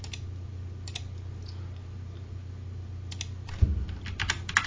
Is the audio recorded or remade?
recorded